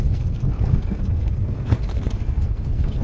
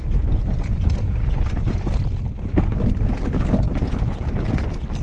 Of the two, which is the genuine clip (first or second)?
second